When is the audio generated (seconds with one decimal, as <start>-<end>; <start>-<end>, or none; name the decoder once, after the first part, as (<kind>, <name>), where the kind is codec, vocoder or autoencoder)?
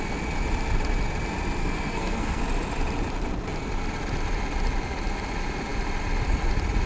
1.6-2.4 (codec, SNAC)